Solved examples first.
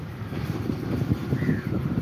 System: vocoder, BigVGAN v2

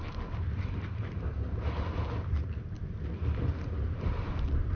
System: none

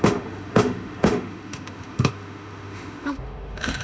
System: autoencoder, DAC-VAE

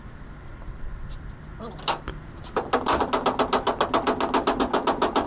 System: none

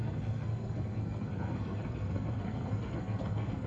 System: codec, SNAC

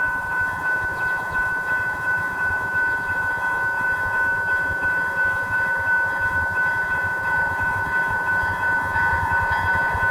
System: vocoder, Vocos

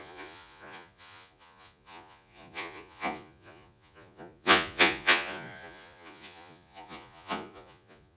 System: vocoder, Vocos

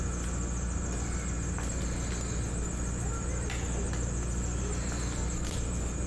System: none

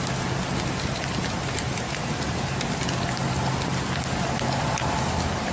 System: none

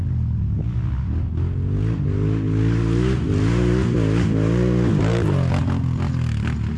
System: none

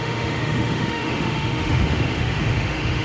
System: autoencoder, DAC-VAE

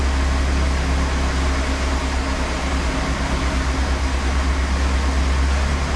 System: none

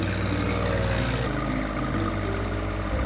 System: none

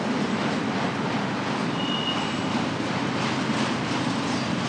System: none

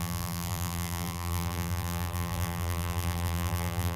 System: vocoder, BigVGAN v2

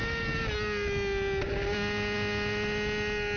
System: none